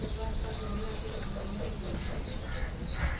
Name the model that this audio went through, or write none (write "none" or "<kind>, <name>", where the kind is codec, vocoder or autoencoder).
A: none